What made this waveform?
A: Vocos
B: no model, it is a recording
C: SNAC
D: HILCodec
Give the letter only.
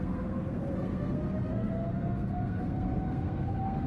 C